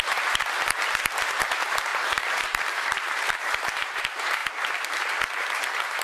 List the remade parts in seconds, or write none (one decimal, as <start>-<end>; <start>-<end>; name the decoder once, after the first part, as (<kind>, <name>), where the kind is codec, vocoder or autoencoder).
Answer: 1.9-4.0 (vocoder, BigVGAN v2)